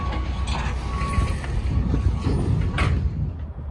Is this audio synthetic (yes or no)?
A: no